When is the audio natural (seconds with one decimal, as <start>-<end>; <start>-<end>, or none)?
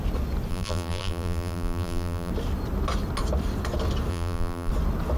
0.0-0.5; 2.3-4.1; 4.7-5.2